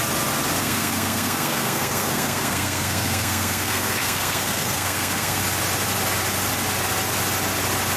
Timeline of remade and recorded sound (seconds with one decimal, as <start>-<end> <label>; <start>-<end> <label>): 0.0-0.6 recorded; 0.6-5.4 remade; 5.4-8.0 recorded